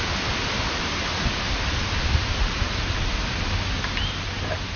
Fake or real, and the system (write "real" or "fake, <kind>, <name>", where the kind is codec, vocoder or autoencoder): real